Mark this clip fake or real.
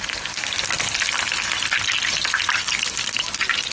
real